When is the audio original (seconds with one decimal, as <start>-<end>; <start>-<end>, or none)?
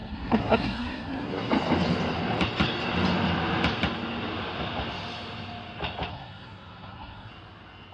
1.5-6.1; 7.3-7.9